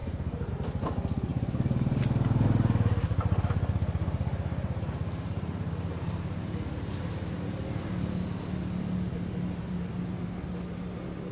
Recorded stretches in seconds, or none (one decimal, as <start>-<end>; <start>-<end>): 0.5-1.3; 2.0-11.3